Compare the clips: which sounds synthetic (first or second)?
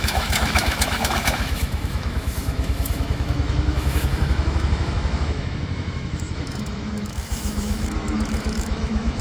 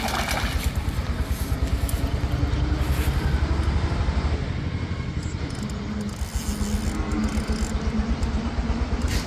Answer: first